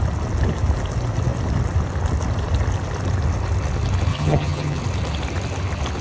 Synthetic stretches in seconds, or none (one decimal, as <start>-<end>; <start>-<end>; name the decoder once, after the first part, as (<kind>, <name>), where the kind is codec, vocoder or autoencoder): 4.1-4.8 (vocoder, HiFi-GAN)